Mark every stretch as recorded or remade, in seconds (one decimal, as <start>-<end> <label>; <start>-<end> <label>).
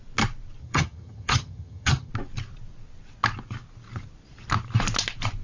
0.0-0.6 recorded; 0.6-2.1 remade; 2.1-5.4 recorded